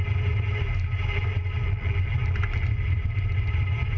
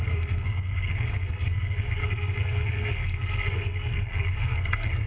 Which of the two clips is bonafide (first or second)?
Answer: first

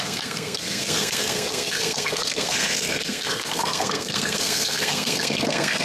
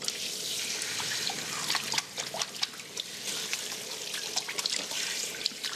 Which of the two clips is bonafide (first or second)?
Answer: second